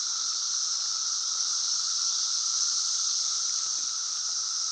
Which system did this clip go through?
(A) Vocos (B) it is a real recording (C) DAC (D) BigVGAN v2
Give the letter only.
D